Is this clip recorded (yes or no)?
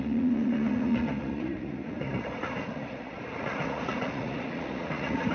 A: no